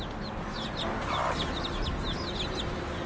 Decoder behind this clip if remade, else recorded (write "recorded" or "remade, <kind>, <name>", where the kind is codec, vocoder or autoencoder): recorded